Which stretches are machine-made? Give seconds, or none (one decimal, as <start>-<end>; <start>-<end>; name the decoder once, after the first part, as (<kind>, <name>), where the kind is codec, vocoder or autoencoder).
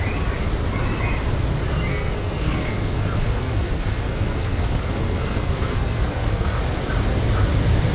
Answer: 1.9-6.6 (codec, SNAC)